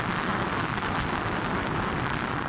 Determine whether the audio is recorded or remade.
recorded